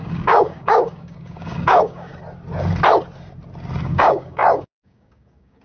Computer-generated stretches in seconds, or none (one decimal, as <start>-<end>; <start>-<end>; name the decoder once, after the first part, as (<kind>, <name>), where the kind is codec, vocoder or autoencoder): 0.0-2.1 (codec, DAC); 3.8-5.6